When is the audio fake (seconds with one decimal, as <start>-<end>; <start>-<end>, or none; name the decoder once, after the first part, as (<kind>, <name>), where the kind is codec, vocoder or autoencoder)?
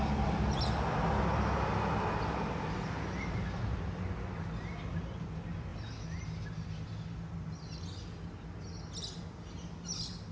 none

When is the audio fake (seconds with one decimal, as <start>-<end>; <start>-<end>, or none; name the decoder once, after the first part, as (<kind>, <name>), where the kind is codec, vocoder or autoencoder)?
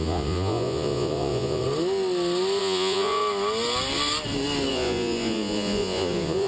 0.0-1.6 (vocoder, Vocos); 2.6-3.2; 4.7-6.5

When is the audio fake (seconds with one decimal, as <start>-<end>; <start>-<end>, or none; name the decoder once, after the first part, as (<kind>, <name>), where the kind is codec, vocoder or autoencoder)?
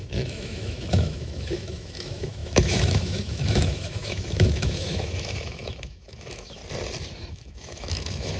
0.0-6.6 (autoencoder, DAC-VAE); 7.3-8.4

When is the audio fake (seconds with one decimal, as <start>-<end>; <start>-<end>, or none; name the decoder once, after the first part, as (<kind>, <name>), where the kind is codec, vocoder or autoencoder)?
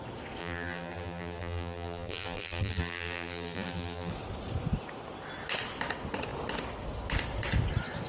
0.4-4.1 (vocoder, BigVGAN v2)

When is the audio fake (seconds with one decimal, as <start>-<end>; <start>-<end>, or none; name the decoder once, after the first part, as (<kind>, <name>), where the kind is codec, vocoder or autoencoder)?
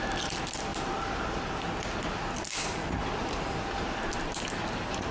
0.7-1.6 (vocoder, BigVGAN v2); 3.2-4.1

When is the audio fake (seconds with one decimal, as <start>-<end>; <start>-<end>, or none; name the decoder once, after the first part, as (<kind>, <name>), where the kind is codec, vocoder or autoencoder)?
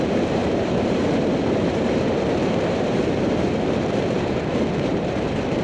0.0-5.6 (vocoder, BigVGAN v2)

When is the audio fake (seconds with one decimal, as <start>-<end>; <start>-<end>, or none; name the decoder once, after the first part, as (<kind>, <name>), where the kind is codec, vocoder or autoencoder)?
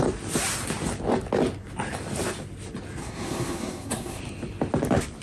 3.0-4.2 (codec, SNAC)